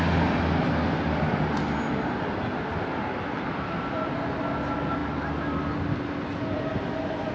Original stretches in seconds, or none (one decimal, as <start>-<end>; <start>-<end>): 0.0-7.3